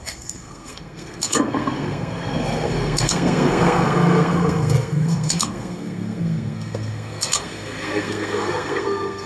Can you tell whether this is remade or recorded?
remade